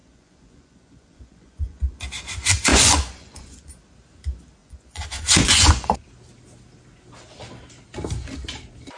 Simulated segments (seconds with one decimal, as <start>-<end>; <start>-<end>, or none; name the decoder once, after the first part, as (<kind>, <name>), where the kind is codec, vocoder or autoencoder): 0.0-2.0 (vocoder, Vocos); 2.7-3.7; 4.6-5.9